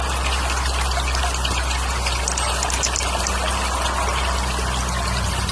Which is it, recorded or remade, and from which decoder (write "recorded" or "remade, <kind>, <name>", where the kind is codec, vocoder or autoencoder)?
recorded